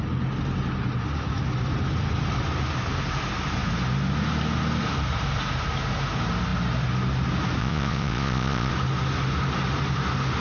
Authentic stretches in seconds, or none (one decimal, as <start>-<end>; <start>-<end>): 0.0-7.6; 8.7-10.4